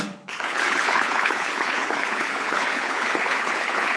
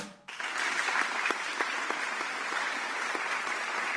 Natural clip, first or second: second